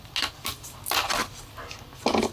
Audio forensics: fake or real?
real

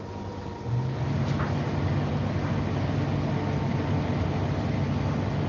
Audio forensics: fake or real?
real